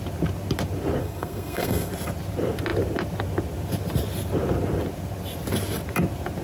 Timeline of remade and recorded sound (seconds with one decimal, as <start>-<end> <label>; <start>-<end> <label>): 0.0-1.0 recorded; 1.0-1.9 remade; 1.9-6.4 recorded

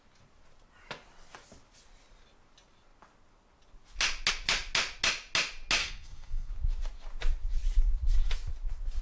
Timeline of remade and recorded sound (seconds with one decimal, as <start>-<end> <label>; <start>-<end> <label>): 0.0-5.8 recorded; 5.8-6.5 remade; 6.5-9.0 recorded

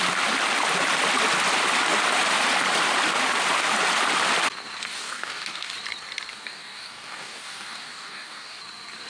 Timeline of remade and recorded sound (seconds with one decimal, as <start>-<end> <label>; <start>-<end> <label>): 0.0-4.9 recorded; 4.9-5.7 remade; 5.7-6.3 recorded; 6.3-8.6 remade; 8.6-9.1 recorded